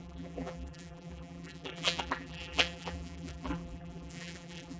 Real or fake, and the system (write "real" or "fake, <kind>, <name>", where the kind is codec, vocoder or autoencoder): fake, vocoder, BigVGAN v2